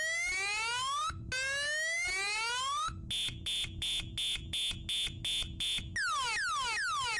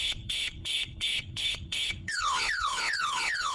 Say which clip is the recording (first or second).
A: first